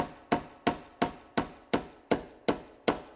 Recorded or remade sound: recorded